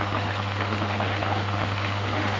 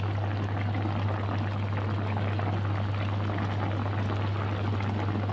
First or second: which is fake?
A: first